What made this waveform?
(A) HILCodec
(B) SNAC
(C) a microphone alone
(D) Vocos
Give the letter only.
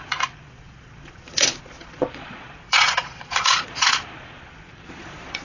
D